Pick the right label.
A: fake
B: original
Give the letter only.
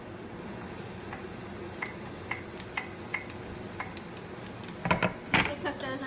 B